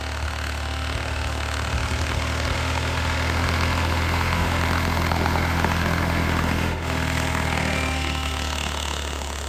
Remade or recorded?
remade